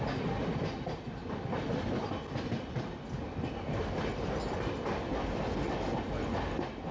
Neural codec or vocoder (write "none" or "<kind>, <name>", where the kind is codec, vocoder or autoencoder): none